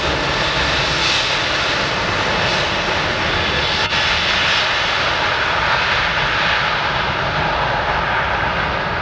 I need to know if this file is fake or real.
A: real